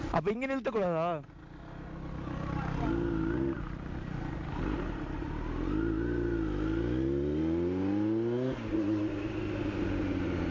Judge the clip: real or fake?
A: real